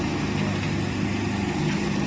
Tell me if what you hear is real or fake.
real